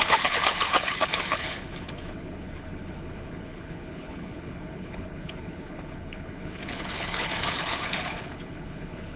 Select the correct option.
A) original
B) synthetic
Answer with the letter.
B